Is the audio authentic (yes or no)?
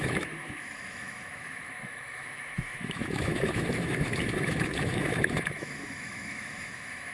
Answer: no